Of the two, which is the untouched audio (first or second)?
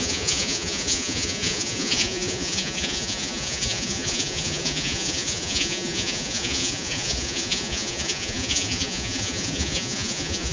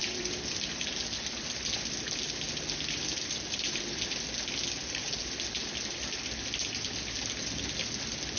second